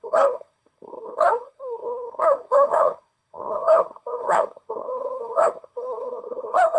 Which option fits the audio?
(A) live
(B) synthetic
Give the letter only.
B